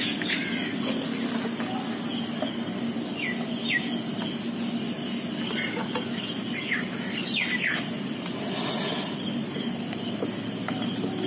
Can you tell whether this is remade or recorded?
recorded